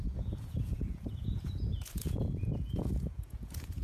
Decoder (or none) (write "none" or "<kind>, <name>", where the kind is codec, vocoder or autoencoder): vocoder, Vocos